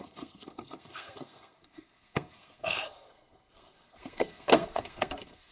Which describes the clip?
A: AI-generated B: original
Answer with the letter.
A